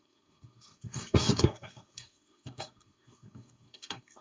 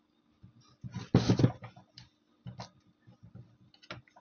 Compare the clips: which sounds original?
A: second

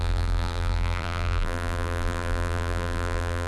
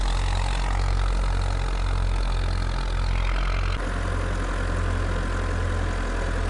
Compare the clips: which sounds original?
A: second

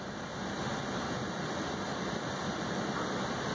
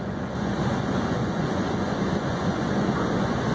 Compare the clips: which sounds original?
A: first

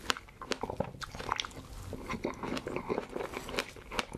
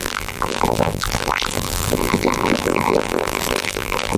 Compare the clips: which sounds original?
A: first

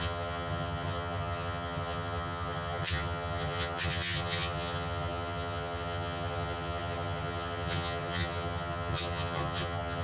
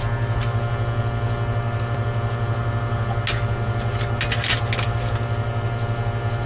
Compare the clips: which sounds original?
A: second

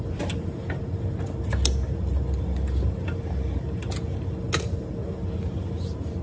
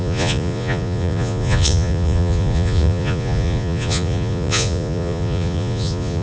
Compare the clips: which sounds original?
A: first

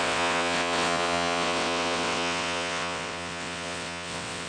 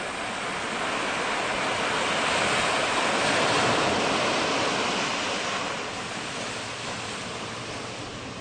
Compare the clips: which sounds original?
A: second